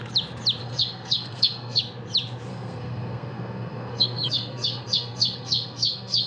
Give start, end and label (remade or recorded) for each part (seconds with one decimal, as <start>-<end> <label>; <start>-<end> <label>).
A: 0.0-0.6 recorded; 0.6-1.8 remade; 1.8-2.5 recorded; 2.5-6.3 remade